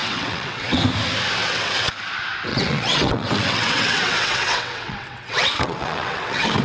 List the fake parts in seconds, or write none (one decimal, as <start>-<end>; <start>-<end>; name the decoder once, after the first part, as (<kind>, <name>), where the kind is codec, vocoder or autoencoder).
0.0-0.8 (vocoder, WaveNeXt); 1.4-1.9; 2.5-6.6